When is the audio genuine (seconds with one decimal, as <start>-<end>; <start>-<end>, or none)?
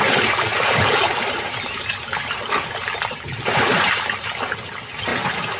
0.0-0.5; 3.9-5.1